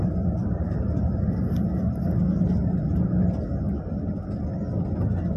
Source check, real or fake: real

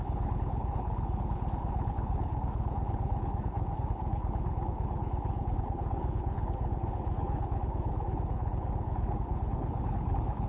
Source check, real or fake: fake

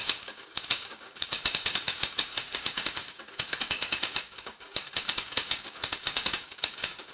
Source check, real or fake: fake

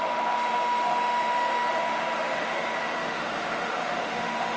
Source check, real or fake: fake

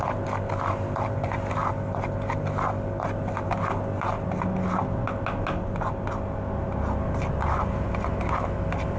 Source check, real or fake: real